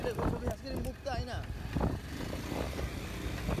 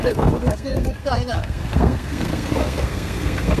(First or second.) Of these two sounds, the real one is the first